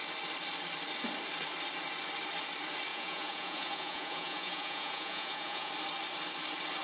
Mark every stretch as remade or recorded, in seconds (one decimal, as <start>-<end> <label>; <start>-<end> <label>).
0.0-2.9 recorded; 2.9-5.7 remade; 5.7-6.8 recorded